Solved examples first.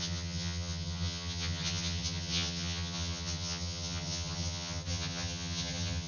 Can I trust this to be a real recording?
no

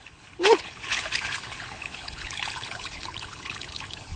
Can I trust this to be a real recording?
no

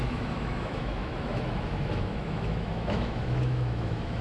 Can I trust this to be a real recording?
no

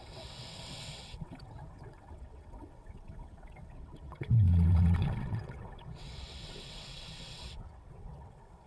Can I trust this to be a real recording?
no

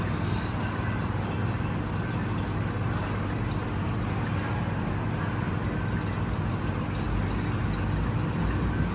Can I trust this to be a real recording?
yes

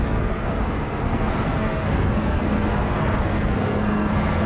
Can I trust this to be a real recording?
no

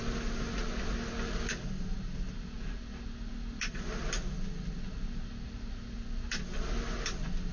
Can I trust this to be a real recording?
yes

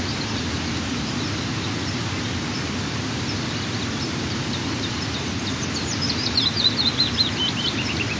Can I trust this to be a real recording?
no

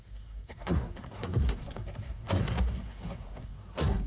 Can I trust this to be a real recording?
no